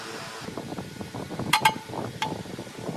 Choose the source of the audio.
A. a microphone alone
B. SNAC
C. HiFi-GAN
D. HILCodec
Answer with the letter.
A